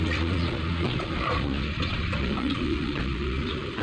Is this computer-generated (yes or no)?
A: yes